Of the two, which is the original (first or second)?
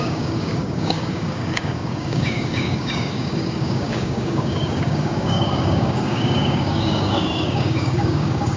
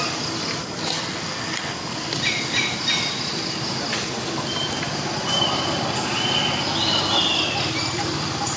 second